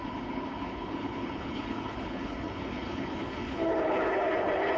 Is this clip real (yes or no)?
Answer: no